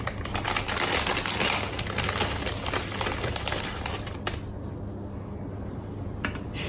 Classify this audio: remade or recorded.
recorded